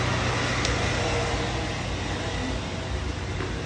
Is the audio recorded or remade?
recorded